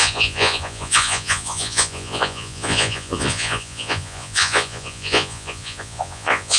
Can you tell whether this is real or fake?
fake